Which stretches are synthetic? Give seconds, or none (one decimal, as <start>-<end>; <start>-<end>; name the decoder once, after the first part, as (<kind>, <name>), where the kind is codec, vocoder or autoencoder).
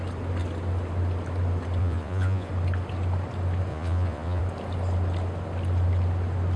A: 1.8-2.5 (vocoder, Vocos); 3.7-4.4